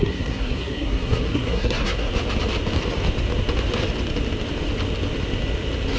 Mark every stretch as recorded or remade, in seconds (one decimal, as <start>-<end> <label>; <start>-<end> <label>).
0.0-2.1 remade; 2.1-6.0 recorded